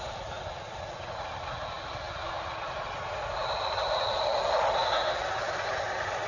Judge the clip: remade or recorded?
recorded